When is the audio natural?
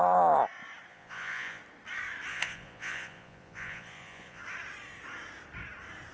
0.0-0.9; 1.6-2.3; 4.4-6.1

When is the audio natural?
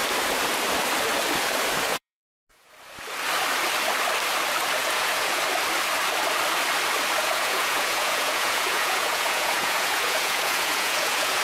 0.0-1.9; 2.7-4.8; 5.4-7.2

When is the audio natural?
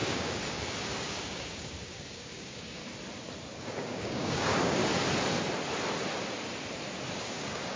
2.8-3.6; 4.8-7.2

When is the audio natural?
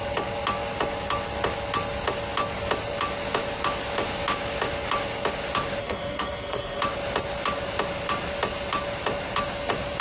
0.0-5.8; 6.8-10.0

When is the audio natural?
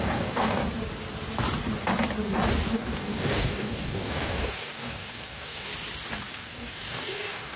0.6-2.7; 5.7-6.3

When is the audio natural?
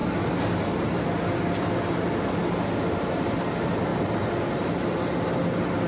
0.0-5.9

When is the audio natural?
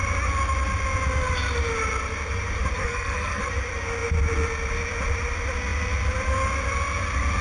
0.0-2.8; 3.4-7.4